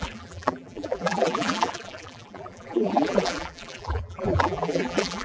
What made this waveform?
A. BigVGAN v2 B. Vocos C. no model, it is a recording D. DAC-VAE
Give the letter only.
A